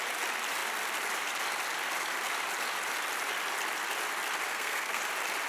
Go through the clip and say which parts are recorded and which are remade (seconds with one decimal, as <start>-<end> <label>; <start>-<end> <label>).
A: 0.0-4.5 recorded; 4.5-5.0 remade; 5.0-5.5 recorded